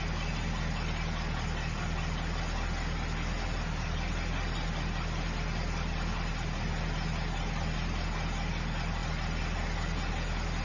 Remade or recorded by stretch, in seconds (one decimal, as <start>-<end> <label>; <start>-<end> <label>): 0.0-10.6 recorded